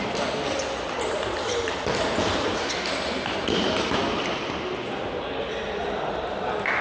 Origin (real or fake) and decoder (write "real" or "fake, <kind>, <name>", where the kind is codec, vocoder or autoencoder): real